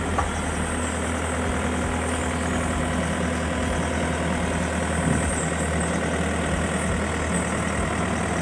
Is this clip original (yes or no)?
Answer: yes